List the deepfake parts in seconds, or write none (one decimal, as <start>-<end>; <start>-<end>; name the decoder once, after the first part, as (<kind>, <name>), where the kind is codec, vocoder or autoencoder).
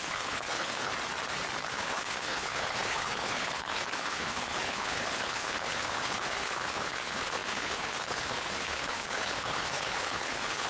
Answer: 0.0-0.9 (codec, HILCodec); 1.7-10.7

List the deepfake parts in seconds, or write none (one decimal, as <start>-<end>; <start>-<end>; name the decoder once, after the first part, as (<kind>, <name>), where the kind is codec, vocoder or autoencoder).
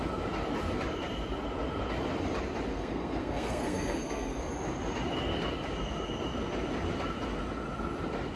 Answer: 2.7-4.5 (codec, SNAC)